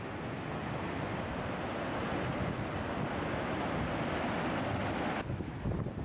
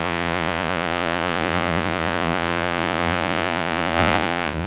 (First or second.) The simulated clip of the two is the second